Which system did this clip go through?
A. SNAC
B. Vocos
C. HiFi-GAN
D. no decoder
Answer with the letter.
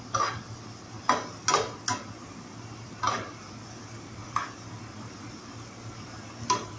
D